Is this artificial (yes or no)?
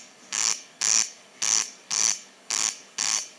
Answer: yes